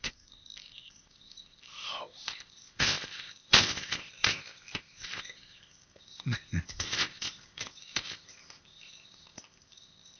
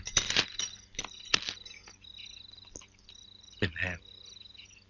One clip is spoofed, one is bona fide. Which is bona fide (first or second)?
second